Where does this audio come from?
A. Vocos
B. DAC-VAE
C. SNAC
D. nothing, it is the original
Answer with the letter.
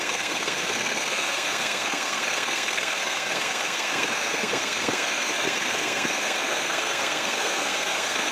C